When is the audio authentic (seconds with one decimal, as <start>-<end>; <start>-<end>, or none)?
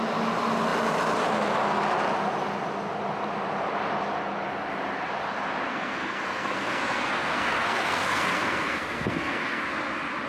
0.0-5.7; 9.7-10.3